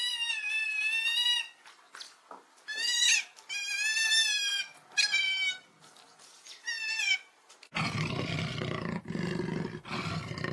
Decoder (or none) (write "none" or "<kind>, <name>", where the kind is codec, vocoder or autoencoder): none